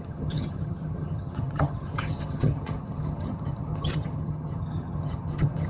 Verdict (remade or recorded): remade